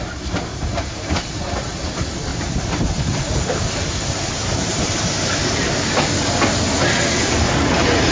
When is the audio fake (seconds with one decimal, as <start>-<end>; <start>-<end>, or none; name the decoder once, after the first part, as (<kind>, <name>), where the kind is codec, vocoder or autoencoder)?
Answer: 0.5-1.8 (vocoder, BigVGAN v2); 2.3-6.1